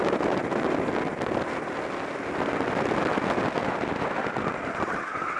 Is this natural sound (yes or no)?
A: yes